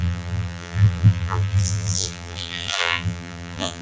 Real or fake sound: fake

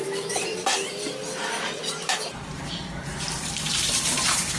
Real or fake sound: fake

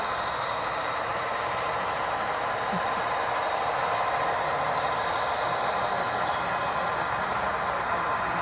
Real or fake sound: fake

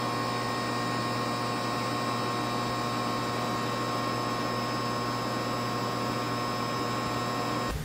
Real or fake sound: real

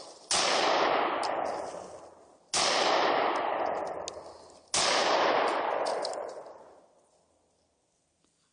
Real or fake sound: real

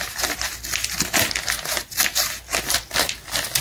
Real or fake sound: real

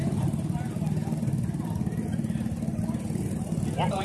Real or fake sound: real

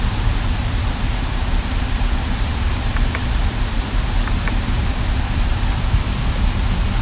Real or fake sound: fake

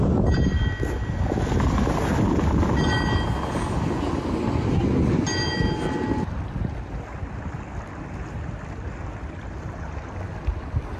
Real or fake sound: real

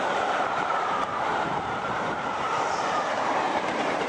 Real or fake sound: fake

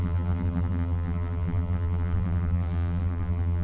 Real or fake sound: fake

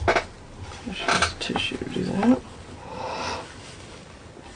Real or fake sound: real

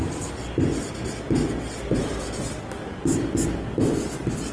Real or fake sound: real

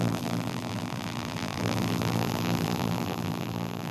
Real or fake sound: fake